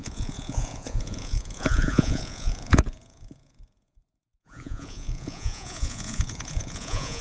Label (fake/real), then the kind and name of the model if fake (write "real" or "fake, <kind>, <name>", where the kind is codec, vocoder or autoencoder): fake, vocoder, Vocos